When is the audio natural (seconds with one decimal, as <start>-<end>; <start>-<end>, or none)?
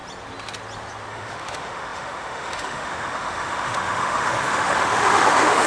0.0-1.1